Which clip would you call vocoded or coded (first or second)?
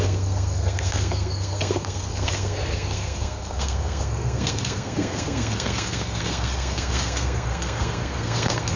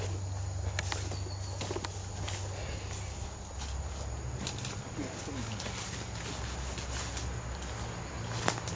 first